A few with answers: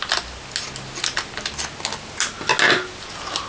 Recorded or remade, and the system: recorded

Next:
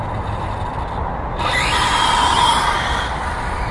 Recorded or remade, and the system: recorded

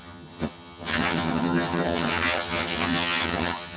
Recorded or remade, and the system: remade, vocoder, HiFi-GAN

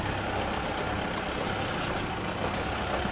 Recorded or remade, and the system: recorded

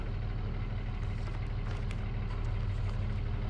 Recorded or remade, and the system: recorded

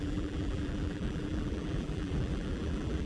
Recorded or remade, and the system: remade, vocoder, BigVGAN v2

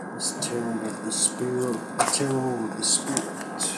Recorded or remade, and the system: recorded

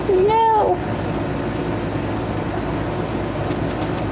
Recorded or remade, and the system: recorded